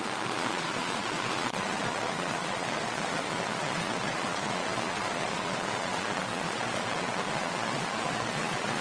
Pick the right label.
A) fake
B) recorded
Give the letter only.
A